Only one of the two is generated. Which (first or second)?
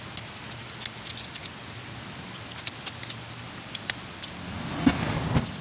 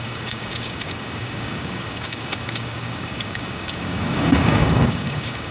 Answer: second